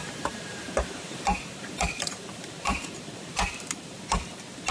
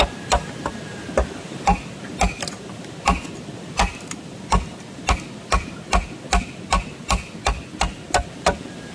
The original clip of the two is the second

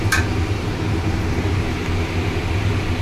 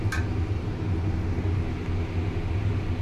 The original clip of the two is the second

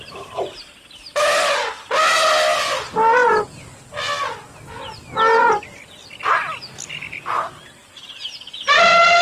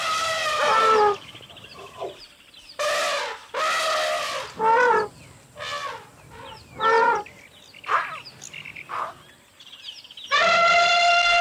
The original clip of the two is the first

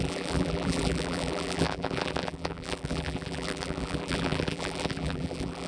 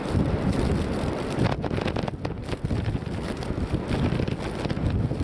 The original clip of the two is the second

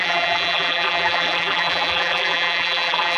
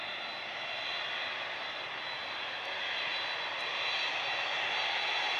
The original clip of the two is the second